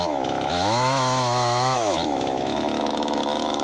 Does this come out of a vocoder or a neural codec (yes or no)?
yes